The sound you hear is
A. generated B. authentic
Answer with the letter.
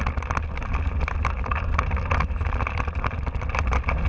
B